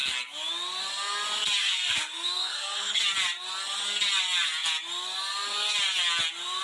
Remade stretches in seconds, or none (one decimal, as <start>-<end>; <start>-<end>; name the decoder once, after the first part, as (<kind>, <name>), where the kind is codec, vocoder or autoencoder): 1.6-3.0 (codec, SNAC)